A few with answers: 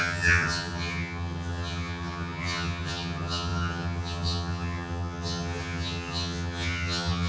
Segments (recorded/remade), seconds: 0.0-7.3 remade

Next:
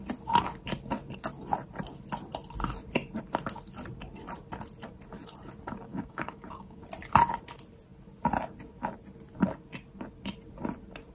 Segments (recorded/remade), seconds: 0.0-5.9 recorded; 5.9-6.8 remade; 6.8-11.1 recorded